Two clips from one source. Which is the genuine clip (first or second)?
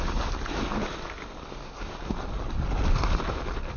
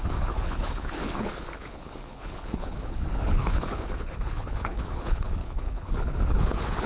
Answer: first